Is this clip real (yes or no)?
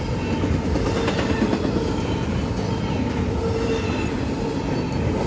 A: yes